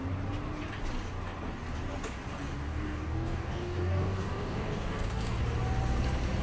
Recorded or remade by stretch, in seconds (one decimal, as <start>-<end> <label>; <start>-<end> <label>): 0.0-2.7 recorded; 2.7-5.4 remade; 5.4-6.4 recorded